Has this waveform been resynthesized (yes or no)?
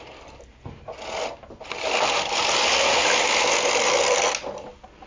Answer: no